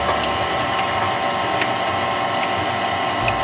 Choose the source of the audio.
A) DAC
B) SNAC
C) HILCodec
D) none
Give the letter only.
D